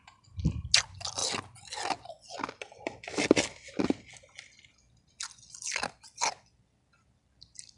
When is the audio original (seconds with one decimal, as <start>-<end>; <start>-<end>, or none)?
0.0-7.8